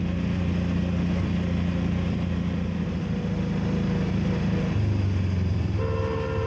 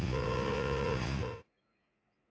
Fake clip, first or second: second